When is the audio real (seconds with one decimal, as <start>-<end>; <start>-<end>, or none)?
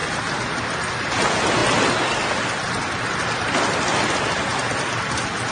0.0-5.5